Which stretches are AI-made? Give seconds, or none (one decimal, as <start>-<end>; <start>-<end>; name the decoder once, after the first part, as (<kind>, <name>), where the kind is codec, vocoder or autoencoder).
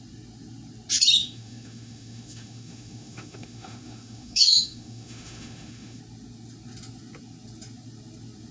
1.2-6.0 (autoencoder, DAC-VAE)